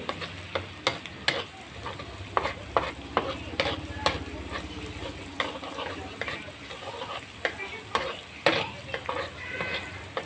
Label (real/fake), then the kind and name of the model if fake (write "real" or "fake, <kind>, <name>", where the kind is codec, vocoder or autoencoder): real